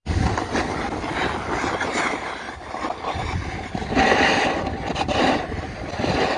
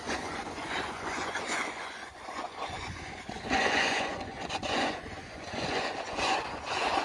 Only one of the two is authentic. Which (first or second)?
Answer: first